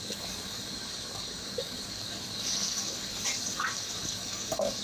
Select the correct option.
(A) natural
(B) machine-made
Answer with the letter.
B